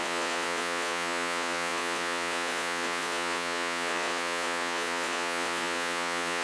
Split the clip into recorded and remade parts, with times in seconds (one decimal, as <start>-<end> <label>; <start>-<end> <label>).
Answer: 0.0-6.4 remade